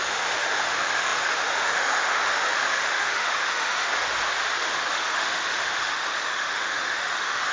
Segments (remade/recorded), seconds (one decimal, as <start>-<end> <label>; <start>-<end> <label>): 0.0-3.9 remade; 3.9-4.9 recorded; 4.9-7.5 remade